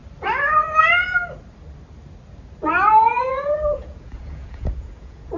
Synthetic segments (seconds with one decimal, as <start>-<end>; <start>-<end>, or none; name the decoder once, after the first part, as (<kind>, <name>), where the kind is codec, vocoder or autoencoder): 3.2-5.4 (vocoder, Vocos)

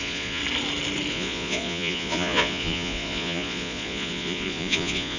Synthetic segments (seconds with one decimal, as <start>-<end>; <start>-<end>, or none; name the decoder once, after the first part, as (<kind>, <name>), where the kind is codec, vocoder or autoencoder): 0.0-0.4 (vocoder, Vocos); 1.1-5.2

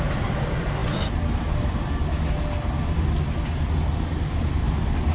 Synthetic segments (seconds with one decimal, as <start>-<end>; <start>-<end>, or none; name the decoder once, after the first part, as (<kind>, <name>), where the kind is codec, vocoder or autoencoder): none

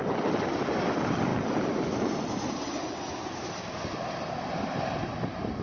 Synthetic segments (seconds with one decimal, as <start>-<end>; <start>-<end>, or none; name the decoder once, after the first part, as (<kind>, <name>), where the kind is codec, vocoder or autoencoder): none